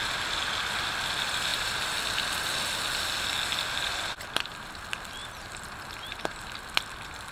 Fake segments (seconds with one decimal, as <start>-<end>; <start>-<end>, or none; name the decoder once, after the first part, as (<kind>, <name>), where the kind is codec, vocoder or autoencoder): none